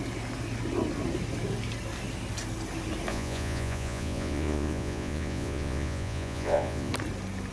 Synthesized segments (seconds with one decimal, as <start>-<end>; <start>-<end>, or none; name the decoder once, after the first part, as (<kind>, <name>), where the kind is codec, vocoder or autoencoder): 3.1-6.9 (vocoder, Vocos)